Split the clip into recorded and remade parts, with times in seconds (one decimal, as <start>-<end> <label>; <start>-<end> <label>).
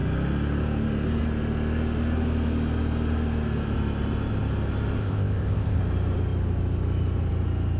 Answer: 0.0-5.0 recorded; 5.0-5.8 remade; 5.8-7.8 recorded